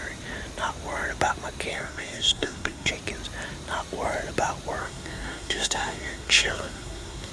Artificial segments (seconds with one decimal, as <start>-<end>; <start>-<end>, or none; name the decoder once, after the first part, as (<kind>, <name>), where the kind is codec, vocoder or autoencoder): 1.7-2.9 (codec, SNAC); 4.8-7.3